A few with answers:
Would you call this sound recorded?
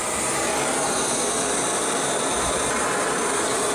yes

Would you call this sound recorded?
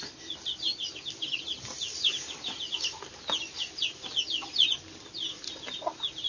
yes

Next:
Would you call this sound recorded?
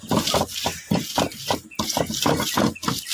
yes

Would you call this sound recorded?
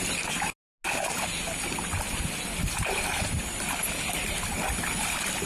yes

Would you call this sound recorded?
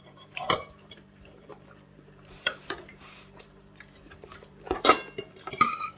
no